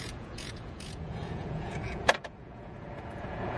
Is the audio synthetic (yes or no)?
yes